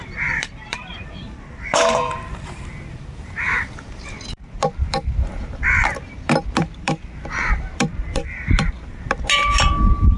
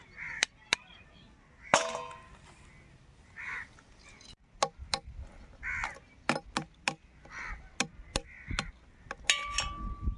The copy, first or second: first